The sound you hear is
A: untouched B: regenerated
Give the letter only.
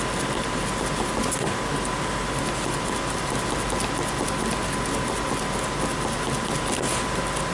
A